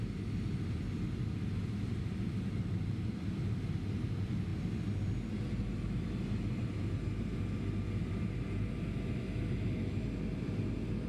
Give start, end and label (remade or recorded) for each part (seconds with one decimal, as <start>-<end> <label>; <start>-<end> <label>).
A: 0.0-11.1 recorded